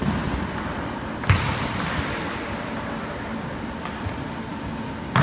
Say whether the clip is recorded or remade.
recorded